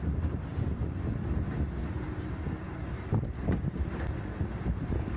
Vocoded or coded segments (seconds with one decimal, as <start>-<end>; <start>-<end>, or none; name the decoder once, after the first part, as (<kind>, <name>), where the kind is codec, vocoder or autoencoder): 0.5-1.4 (vocoder, BigVGAN v2)